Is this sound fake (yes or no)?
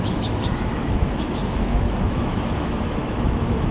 yes